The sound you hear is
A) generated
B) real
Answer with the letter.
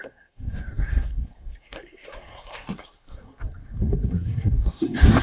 A